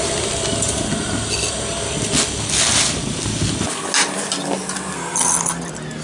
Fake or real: real